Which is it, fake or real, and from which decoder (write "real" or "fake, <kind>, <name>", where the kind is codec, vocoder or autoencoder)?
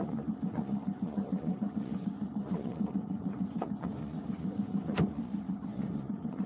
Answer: fake, vocoder, Vocos